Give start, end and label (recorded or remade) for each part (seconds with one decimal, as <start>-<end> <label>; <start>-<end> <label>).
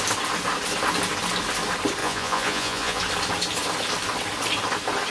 0.0-2.0 recorded; 2.0-3.0 remade; 3.0-5.1 recorded